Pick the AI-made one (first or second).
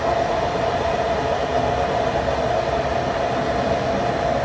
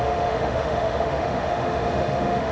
second